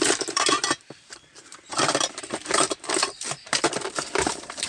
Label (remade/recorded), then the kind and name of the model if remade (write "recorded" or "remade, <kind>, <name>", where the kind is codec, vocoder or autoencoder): remade, vocoder, BigVGAN v2